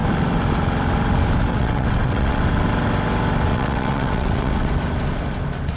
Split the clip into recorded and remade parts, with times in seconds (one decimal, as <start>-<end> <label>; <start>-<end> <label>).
0.0-1.5 recorded; 1.5-2.4 remade; 2.4-3.5 recorded; 3.5-4.7 remade; 4.7-5.8 recorded